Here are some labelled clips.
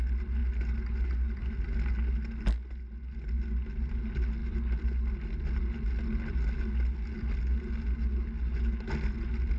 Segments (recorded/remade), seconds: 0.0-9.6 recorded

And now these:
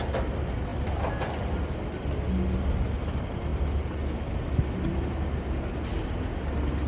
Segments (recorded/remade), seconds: 0.0-6.9 recorded

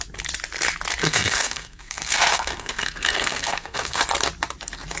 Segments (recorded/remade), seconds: 0.0-1.0 recorded; 1.0-4.0 remade; 4.0-5.0 recorded

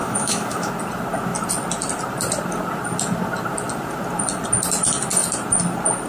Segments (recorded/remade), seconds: 0.0-0.7 remade; 0.7-6.1 recorded

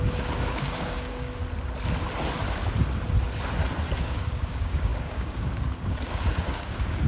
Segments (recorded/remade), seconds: 0.0-1.4 remade; 1.4-4.0 recorded; 4.0-7.1 remade

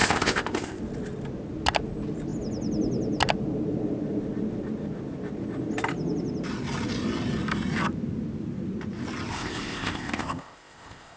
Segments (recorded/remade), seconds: 0.0-0.8 remade; 0.8-9.3 recorded; 9.3-11.2 remade

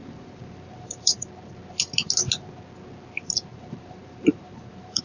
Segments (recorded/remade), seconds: 0.0-1.3 remade; 1.3-3.5 recorded; 3.5-5.0 remade